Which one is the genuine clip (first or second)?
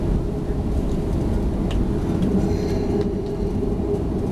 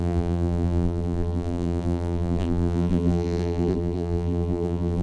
first